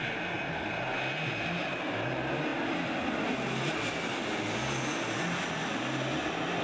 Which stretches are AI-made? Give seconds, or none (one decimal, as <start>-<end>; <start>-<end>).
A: none